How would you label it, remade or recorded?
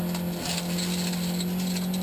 recorded